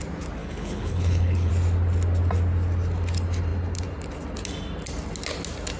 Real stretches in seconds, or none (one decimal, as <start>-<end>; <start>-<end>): 0.0-0.4; 1.5-5.8